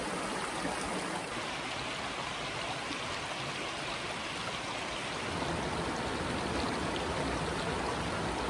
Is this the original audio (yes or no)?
yes